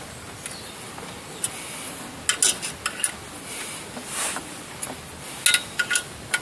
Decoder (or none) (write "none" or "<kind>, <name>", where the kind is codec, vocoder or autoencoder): none